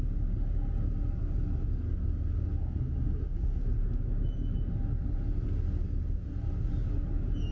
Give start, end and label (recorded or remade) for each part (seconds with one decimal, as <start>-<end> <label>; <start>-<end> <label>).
0.0-2.6 recorded; 2.6-3.6 remade; 3.6-7.5 recorded